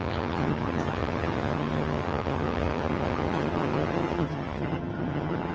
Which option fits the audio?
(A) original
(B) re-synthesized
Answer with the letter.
B